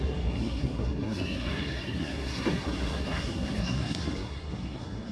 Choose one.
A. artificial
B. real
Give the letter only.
A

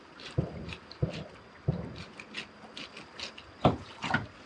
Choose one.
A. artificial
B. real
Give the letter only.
B